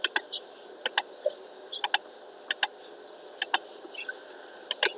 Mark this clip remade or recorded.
recorded